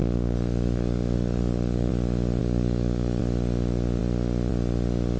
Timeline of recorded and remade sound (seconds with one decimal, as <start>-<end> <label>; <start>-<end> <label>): 0.0-1.9 remade; 1.9-2.4 recorded; 2.4-3.2 remade; 3.2-5.2 recorded